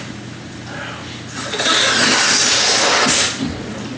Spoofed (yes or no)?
no